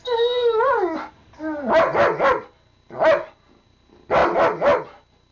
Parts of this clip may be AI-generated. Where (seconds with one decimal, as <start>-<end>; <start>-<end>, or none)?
none